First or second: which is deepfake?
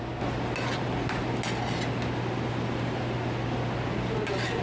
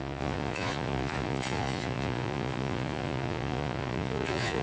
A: second